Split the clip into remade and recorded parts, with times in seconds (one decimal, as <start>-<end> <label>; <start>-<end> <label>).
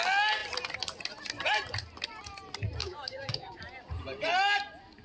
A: 0.0-2.8 recorded; 2.8-3.6 remade; 3.6-5.0 recorded